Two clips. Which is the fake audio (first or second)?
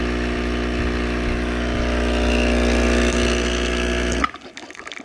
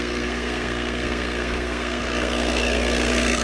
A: second